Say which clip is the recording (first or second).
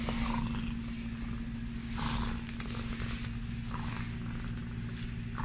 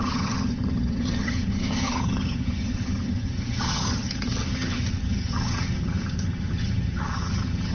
first